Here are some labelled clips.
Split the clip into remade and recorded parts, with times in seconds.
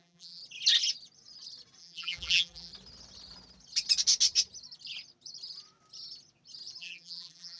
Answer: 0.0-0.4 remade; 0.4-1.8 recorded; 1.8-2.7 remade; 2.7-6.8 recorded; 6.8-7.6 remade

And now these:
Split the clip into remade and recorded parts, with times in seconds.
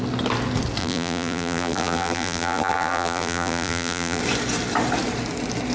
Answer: 0.0-0.8 recorded; 0.8-4.2 remade; 4.2-5.7 recorded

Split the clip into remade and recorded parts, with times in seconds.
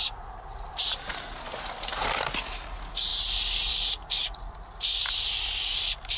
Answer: 0.0-6.2 recorded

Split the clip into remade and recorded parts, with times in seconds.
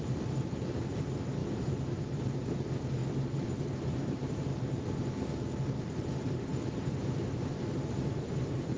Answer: 0.0-3.0 remade; 3.0-4.0 recorded; 4.0-4.5 remade; 4.5-5.8 recorded; 5.8-6.5 remade; 6.5-7.3 recorded; 7.3-8.8 remade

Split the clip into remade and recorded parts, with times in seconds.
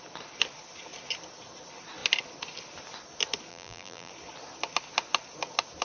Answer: 0.0-3.5 recorded; 3.5-4.1 remade; 4.1-5.8 recorded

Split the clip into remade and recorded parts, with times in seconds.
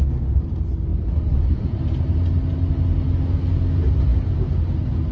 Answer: 0.0-0.9 recorded; 0.9-2.1 remade; 2.1-5.1 recorded